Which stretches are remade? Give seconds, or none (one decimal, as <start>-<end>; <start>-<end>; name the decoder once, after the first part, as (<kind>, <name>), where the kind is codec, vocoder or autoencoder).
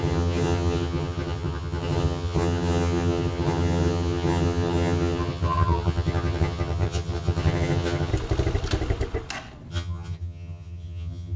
0.0-8.1 (vocoder, HiFi-GAN); 9.7-11.4